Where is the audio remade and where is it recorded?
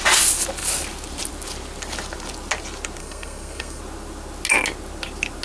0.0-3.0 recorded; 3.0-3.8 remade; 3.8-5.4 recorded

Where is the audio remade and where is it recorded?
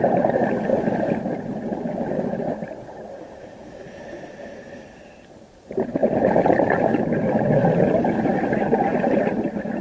0.0-0.7 remade; 0.7-4.3 recorded; 4.3-8.9 remade; 8.9-9.8 recorded